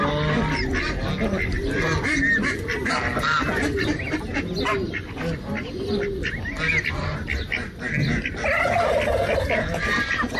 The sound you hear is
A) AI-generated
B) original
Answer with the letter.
B